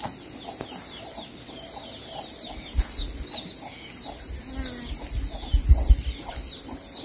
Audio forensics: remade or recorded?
recorded